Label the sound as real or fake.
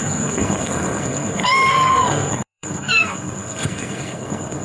fake